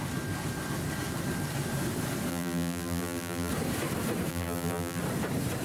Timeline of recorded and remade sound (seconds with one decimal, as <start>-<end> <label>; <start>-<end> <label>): 0.0-2.3 recorded; 2.3-3.5 remade; 3.5-4.3 recorded; 4.3-5.0 remade; 5.0-5.6 recorded